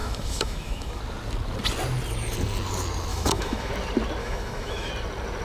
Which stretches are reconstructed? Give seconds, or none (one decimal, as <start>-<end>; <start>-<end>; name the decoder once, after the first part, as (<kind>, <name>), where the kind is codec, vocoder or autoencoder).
0.0-1.0 (autoencoder, DAC-VAE); 3.1-3.7; 4.2-4.9